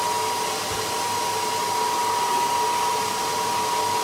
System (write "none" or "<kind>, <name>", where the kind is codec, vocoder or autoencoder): none